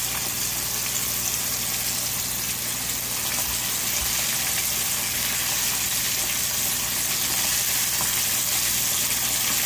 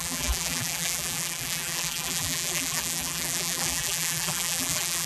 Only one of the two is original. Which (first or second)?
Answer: first